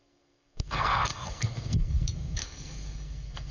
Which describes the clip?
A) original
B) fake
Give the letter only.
B